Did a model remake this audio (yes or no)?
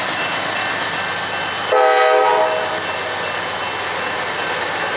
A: no